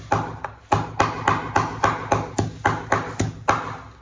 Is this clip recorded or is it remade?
recorded